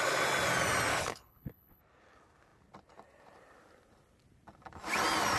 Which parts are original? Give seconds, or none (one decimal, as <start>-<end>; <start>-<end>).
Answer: 0.0-0.9; 1.8-5.4